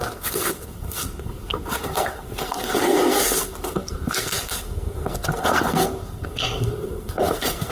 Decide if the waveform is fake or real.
fake